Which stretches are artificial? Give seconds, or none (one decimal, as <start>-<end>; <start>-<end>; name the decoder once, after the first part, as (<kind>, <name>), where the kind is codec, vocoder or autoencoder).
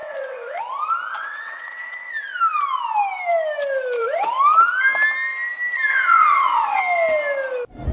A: 0.0-0.6 (vocoder, WaveNeXt); 1.1-2.1; 5.9-6.8